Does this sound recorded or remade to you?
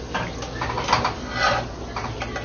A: recorded